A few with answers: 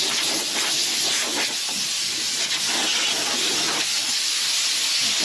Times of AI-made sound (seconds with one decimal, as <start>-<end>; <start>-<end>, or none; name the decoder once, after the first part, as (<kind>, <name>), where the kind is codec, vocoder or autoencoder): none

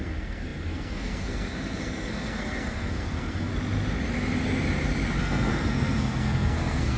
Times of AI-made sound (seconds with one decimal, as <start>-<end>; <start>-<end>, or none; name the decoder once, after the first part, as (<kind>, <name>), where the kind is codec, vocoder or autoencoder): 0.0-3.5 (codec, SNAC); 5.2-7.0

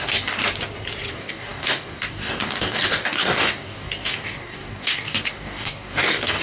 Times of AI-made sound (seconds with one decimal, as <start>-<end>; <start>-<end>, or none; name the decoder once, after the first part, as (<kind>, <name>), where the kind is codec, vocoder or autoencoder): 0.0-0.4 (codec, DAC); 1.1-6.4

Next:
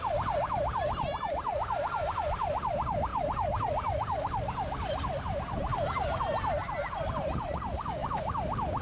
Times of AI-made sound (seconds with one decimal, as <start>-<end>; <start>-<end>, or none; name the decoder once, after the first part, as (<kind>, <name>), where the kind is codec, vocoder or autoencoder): 0.0-3.1 (vocoder, BigVGAN v2); 5.2-6.6; 7.1-8.8

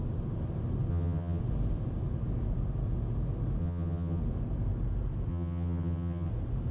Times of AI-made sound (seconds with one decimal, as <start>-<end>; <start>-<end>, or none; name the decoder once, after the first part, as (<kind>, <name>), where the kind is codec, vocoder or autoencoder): 0.9-1.4 (vocoder, HiFi-GAN); 3.6-4.2; 5.3-6.3

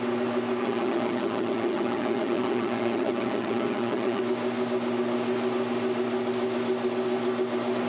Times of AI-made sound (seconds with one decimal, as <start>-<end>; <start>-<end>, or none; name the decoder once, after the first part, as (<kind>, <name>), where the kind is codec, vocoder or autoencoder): 0.6-4.2 (vocoder, HiFi-GAN)

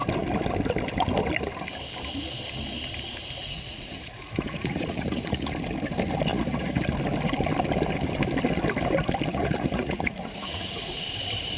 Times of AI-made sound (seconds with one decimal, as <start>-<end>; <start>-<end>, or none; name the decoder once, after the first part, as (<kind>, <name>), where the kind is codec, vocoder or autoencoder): 3.4-5.5 (vocoder, Vocos); 6.3-6.8; 9.3-11.0